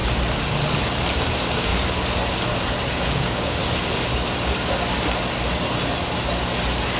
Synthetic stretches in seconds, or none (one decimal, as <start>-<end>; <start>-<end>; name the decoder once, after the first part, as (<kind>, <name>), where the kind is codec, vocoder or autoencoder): 1.1-1.7 (codec, DAC); 2.9-3.6

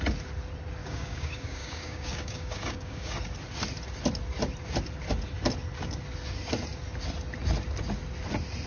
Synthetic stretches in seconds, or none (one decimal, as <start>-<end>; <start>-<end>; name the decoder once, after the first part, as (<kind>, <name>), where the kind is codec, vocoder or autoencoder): 0.8-3.1 (codec, DAC)

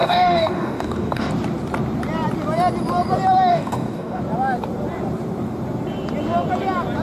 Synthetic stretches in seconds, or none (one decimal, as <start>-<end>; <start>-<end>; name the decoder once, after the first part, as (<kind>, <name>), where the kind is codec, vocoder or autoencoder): 0.0-1.3 (codec, DAC); 3.5-4.2

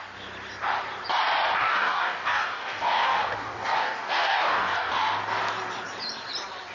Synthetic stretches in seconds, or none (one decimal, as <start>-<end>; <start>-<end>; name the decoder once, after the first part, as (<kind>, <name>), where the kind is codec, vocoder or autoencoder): 1.6-4.9 (codec, DAC)

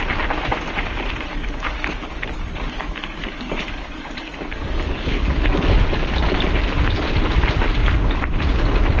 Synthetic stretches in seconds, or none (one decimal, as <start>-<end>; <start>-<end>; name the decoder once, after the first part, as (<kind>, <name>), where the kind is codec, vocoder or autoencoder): 1.3-5.8 (codec, DAC)

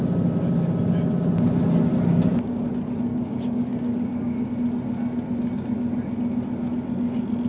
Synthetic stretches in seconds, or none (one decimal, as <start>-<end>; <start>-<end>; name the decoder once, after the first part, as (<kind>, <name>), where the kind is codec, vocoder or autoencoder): 2.1-2.7 (codec, DAC); 3.1-4.5

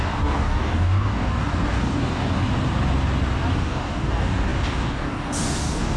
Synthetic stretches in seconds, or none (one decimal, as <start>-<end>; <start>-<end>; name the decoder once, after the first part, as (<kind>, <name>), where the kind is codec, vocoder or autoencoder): 0.0-2.4 (codec, DAC); 3.5-6.0